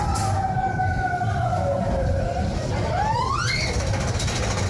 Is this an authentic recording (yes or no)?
yes